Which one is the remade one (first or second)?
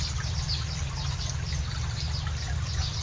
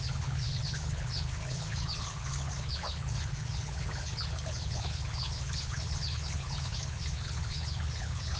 second